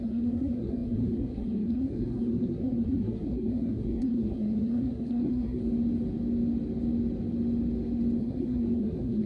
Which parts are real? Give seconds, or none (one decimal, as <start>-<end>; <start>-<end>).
5.6-8.2